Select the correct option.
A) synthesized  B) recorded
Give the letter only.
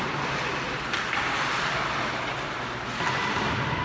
B